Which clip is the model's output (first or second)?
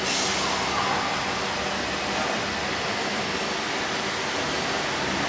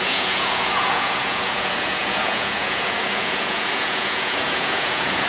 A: second